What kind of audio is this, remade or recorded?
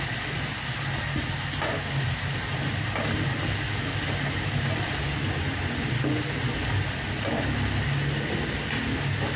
recorded